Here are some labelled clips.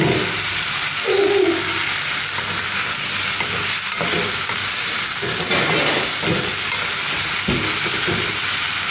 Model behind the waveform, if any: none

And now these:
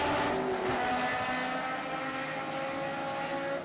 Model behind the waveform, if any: none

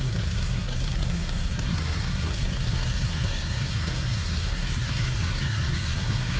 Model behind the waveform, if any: codec, SNAC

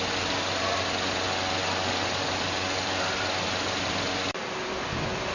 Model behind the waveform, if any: none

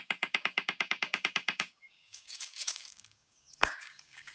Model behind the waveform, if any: codec, DAC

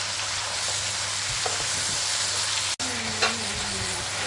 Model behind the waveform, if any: none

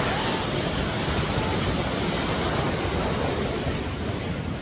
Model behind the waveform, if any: none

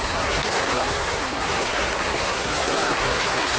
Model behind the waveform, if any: codec, SNAC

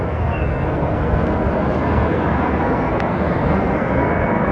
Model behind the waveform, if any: codec, SNAC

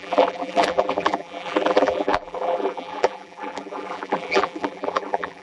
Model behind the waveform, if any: vocoder, BigVGAN v2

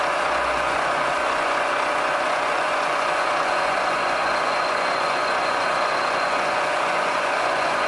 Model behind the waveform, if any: vocoder, Vocos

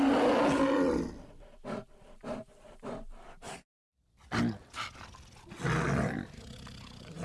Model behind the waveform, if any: none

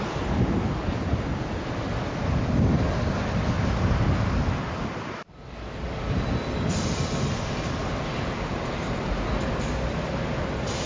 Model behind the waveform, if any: none